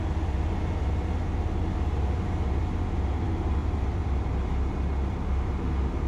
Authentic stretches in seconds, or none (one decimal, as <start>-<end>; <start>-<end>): 0.0-3.6; 4.5-6.1